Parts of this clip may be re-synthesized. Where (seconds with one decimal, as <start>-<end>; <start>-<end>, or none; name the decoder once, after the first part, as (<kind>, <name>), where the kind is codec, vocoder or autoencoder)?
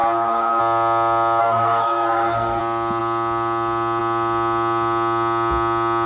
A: 0.0-0.6 (codec, SNAC); 1.4-2.6